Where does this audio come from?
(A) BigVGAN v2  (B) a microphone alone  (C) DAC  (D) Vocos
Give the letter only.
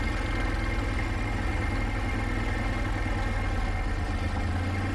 B